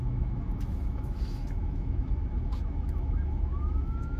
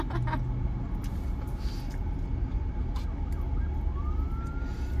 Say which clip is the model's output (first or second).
first